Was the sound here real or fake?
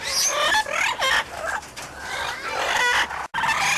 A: real